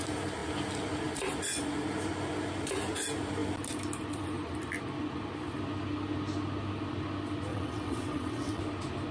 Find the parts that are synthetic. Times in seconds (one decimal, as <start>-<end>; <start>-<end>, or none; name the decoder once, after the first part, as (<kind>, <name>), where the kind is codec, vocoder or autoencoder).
7.5-8.6 (vocoder, WaveNeXt)